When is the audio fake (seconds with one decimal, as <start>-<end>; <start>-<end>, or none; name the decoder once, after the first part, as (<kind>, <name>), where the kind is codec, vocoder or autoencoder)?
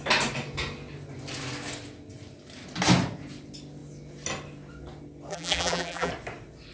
5.3-6.1 (vocoder, BigVGAN v2)